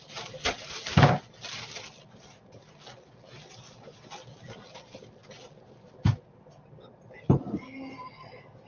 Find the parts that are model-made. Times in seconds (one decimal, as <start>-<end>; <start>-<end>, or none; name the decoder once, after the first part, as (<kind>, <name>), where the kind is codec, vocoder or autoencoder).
none